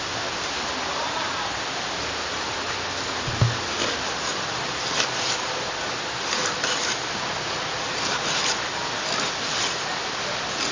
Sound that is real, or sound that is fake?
real